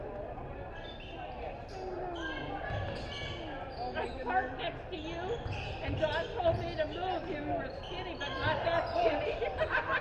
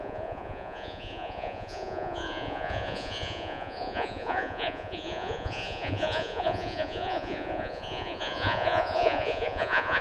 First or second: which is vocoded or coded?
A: second